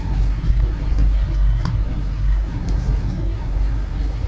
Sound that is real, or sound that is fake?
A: fake